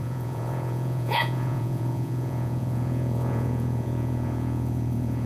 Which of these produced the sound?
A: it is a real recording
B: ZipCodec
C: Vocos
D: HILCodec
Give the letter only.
C